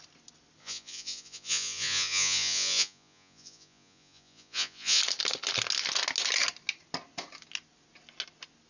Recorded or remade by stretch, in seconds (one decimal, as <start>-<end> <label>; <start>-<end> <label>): 0.0-0.6 recorded; 0.6-5.0 remade; 5.0-8.7 recorded

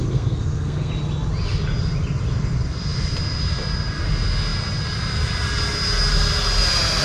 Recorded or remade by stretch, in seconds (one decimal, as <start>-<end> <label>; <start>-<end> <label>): 0.0-0.9 remade; 0.9-7.0 recorded

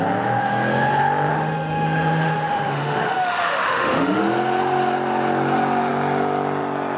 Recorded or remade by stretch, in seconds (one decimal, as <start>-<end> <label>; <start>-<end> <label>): 0.0-1.3 recorded; 1.3-4.2 remade; 4.2-7.0 recorded

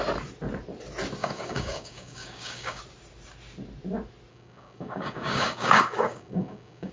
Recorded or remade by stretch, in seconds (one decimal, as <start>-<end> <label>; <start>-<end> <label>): 0.0-1.2 recorded; 1.2-2.8 remade; 2.8-4.3 recorded; 4.3-6.9 remade

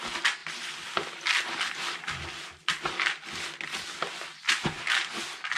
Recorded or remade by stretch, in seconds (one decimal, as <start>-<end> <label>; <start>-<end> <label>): 0.0-5.6 recorded